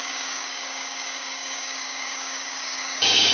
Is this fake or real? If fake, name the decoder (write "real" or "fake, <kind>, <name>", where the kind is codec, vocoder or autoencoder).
fake, codec, DAC